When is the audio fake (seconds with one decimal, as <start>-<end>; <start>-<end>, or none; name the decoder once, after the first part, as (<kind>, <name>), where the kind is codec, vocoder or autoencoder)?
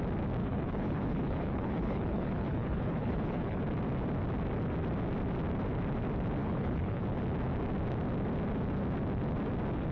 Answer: 0.4-3.6 (codec, HILCodec); 6.4-7.0